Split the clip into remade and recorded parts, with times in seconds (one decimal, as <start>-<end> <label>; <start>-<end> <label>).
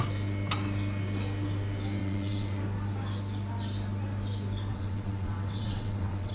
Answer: 0.0-2.0 recorded; 2.0-2.6 remade; 2.6-4.7 recorded; 4.7-6.3 remade